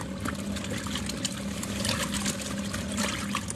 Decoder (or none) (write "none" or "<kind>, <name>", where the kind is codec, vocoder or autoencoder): none